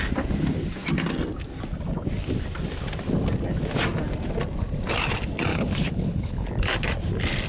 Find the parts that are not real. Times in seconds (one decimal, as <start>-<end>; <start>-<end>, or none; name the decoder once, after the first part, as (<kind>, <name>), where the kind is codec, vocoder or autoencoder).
5.5-6.5 (codec, HILCodec)